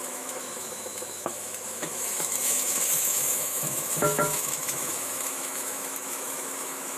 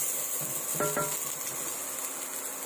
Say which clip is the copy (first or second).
first